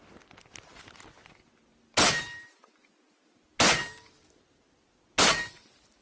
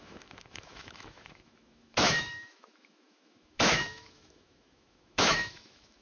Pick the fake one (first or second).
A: second